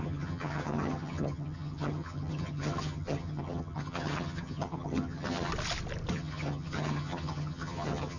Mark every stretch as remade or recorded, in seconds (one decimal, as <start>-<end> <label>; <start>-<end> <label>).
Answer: 0.0-5.5 remade; 5.5-6.1 recorded; 6.1-8.2 remade